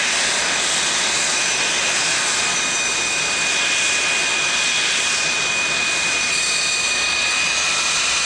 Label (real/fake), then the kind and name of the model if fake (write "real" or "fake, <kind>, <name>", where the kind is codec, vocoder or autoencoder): real